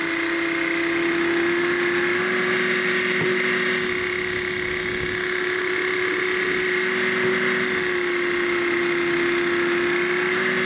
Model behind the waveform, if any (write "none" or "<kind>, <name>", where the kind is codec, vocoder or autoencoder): none